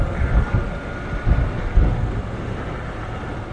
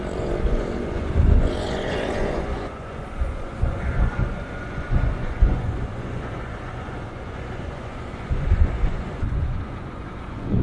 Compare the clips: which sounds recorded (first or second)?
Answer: first